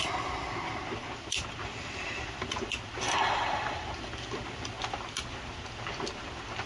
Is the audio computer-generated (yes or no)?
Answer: no